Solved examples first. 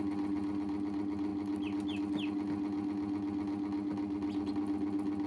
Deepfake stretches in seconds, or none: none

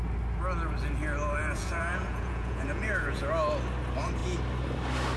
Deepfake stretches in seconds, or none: 1.4-3.3 (vocoder, Vocos)

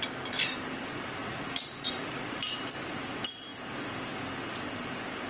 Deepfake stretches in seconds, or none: 1.2-2.4 (vocoder, Vocos)

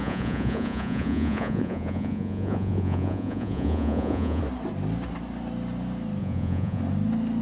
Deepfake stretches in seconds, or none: 0.0-4.4 (vocoder, Vocos); 6.2-6.8

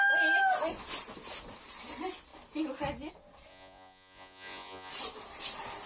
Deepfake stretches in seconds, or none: 3.5-4.9 (vocoder, Vocos)